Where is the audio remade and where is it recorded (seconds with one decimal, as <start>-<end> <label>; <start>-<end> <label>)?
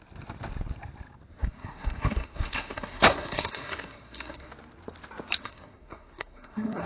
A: 0.0-1.3 recorded; 1.3-4.5 remade; 4.5-5.4 recorded; 5.4-6.9 remade